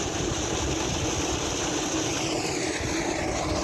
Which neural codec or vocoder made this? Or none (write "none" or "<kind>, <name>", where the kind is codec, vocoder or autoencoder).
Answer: none